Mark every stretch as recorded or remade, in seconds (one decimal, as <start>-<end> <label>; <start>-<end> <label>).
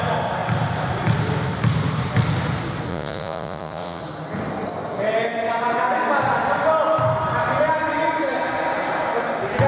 0.0-2.9 recorded; 2.9-4.0 remade; 4.0-9.7 recorded